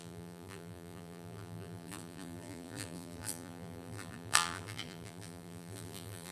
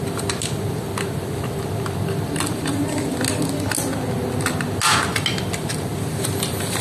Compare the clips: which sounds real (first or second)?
second